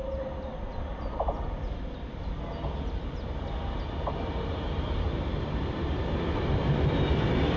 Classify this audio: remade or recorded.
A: recorded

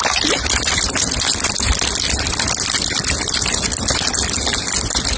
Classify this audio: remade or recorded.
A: recorded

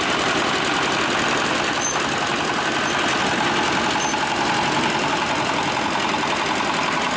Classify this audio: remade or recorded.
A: recorded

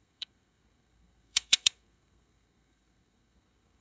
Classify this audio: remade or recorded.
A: remade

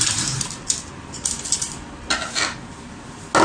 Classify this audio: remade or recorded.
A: recorded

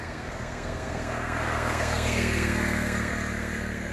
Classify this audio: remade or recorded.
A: remade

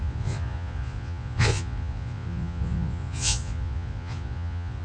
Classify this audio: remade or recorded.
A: remade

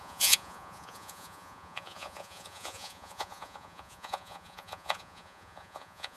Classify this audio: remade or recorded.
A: remade